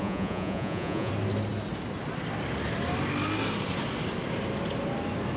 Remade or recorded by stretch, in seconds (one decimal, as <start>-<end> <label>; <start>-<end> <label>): 0.0-1.1 remade; 1.1-5.4 recorded